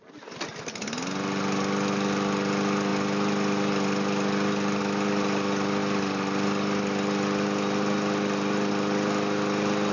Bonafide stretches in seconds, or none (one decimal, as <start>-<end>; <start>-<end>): 0.0-9.9